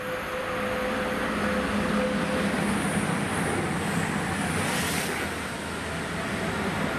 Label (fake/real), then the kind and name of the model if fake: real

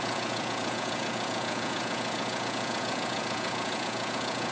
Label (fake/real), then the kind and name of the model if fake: fake, vocoder, Vocos